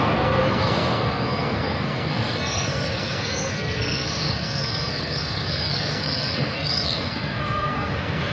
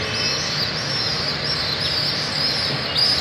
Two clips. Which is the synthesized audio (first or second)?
first